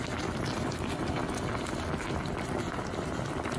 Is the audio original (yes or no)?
yes